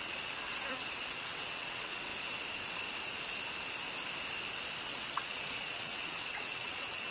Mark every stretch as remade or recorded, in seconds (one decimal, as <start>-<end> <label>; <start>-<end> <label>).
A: 0.0-2.1 remade; 2.1-4.8 recorded; 4.8-7.1 remade

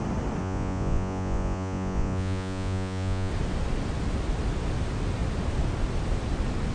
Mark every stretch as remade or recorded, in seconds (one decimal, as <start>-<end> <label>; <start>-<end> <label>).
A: 0.0-0.4 recorded; 0.4-3.3 remade; 3.3-6.7 recorded

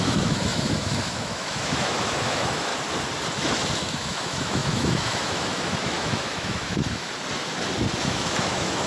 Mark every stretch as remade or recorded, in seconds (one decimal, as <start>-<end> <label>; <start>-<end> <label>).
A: 0.0-2.7 remade; 2.7-3.8 recorded; 3.8-7.1 remade; 7.1-8.0 recorded; 8.0-8.9 remade

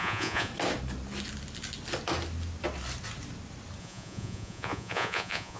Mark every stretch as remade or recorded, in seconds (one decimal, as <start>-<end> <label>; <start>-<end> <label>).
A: 0.0-0.5 remade; 0.5-3.8 recorded; 3.8-5.6 remade

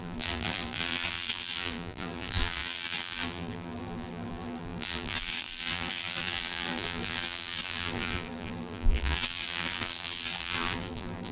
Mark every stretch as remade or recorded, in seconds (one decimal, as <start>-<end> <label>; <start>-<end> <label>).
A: 0.0-11.3 remade